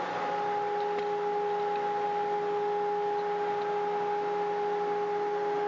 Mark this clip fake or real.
real